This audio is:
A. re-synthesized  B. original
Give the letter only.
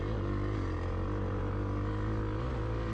B